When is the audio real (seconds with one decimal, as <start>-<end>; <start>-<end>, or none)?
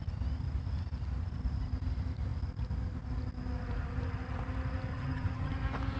0.0-4.9; 5.5-6.0